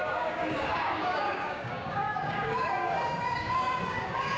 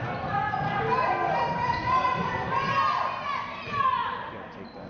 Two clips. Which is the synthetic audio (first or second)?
first